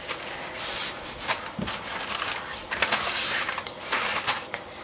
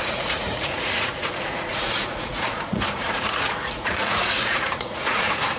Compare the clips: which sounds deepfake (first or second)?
second